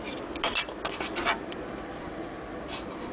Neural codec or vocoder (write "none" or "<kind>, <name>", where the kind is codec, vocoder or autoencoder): none